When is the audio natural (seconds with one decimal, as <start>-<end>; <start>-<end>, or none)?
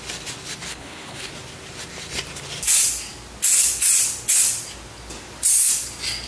0.0-0.7; 1.3-6.3